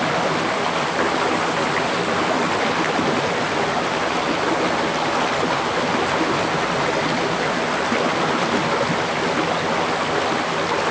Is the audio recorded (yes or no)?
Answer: yes